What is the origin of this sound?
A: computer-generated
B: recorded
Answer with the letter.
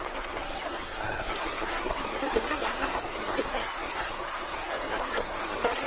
A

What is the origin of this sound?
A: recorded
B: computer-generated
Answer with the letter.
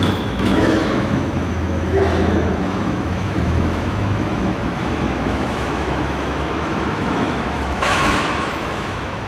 B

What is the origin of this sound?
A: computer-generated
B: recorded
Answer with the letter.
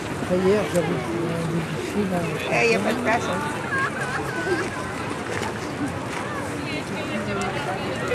B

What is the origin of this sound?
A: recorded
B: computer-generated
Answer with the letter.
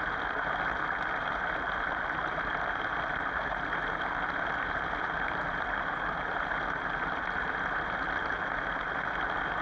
A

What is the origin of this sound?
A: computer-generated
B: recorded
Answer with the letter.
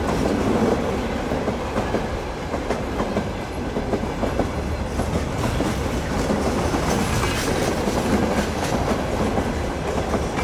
B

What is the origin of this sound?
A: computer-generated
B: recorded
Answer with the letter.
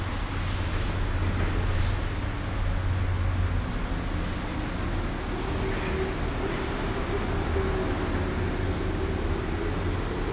B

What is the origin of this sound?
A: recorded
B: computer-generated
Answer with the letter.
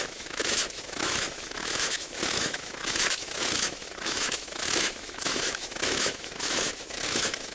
B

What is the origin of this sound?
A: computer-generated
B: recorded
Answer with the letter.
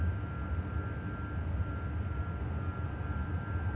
B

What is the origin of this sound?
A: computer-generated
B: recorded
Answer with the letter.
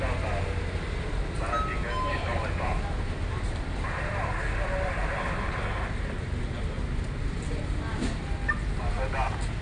B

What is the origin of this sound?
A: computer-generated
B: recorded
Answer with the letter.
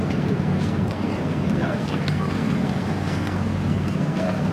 A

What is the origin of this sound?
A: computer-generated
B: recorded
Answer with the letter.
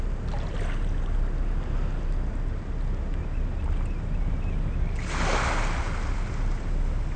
B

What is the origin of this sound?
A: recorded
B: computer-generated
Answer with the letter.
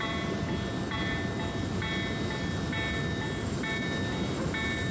A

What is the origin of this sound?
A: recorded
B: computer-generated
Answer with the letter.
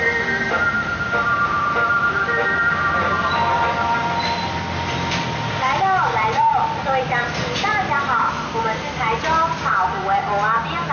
A